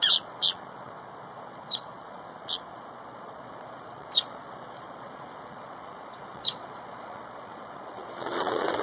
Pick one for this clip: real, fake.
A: fake